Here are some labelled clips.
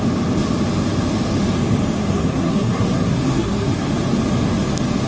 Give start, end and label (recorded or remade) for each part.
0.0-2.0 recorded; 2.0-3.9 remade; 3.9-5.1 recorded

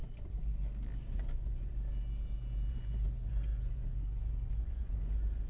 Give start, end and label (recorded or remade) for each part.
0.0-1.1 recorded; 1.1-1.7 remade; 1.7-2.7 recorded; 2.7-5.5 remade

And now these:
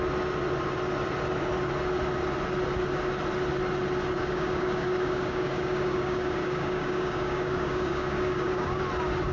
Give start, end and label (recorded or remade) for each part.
0.0-4.2 recorded; 4.2-8.8 remade; 8.8-9.3 recorded